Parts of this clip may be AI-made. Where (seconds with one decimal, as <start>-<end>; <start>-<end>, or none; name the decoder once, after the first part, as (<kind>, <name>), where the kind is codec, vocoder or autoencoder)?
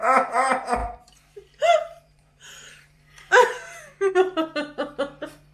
0.8-4.1 (vocoder, BigVGAN v2)